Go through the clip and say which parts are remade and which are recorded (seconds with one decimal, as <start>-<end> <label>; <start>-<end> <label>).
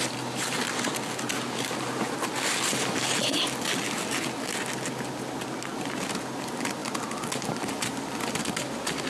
0.0-9.1 recorded